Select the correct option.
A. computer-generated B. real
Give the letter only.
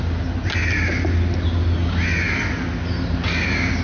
B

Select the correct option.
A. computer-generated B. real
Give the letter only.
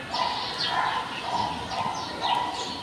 B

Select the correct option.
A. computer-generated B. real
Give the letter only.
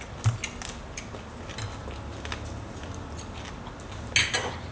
B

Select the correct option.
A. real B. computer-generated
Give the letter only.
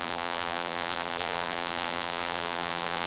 B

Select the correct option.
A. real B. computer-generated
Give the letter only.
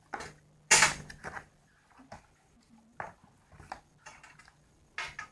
A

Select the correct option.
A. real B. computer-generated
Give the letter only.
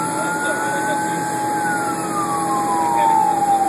A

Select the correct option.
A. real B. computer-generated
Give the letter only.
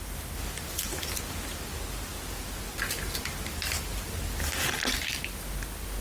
A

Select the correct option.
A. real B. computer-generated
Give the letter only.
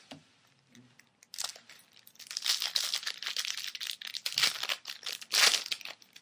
A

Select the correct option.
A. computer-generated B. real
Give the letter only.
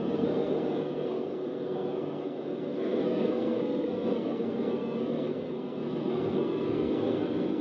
A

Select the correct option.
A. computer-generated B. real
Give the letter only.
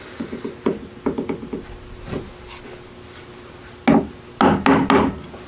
B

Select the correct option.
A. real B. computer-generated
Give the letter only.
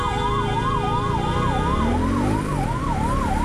A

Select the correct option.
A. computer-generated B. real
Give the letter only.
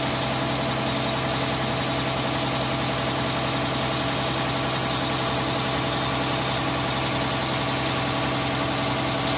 B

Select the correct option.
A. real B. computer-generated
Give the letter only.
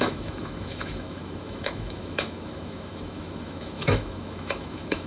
B